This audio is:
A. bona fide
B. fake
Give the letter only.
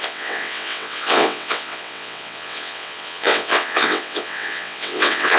B